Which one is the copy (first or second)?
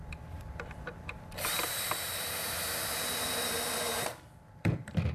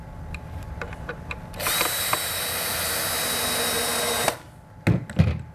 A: first